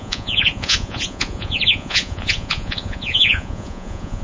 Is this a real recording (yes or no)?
no